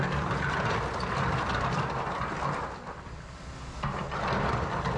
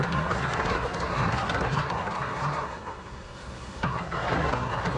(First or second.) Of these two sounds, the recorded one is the first